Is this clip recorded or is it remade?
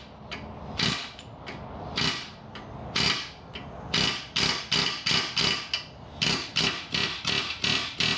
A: recorded